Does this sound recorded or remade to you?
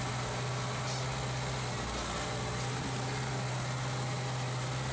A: recorded